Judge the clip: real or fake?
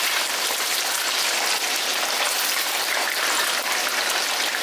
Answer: real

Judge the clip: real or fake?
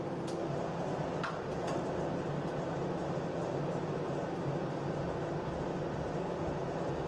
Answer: real